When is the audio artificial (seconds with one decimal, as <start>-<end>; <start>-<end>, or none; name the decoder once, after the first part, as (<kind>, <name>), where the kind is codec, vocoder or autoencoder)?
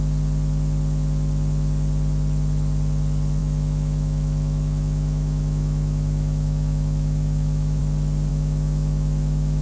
3.4-7.8 (autoencoder, DAC-VAE); 8.3-9.6